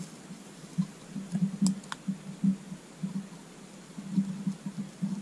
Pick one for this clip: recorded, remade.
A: recorded